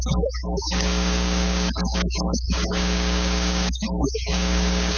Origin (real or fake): fake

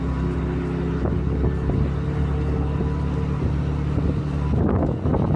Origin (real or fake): real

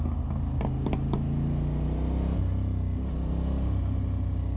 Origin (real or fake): real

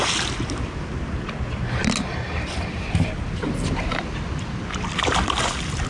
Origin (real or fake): real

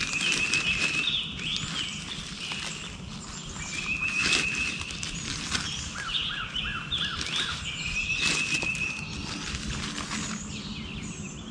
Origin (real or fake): real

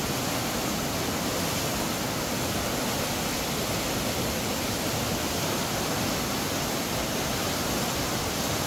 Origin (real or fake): real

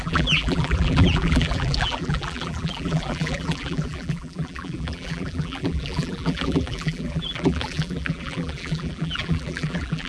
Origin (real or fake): fake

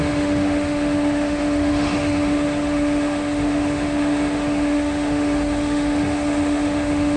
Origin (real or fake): fake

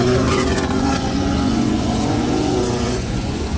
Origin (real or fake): fake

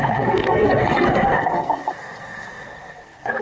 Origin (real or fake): fake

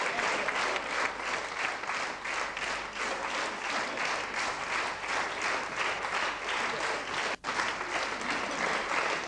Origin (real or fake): real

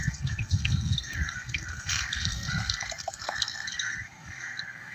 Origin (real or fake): fake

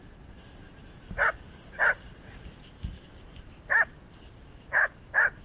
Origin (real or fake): real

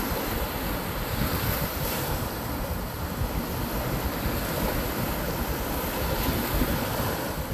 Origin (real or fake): real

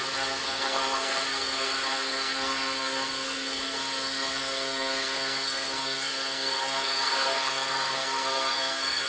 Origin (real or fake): fake